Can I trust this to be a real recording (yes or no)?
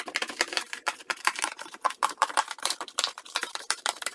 no